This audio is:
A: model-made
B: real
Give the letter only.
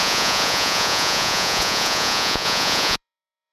A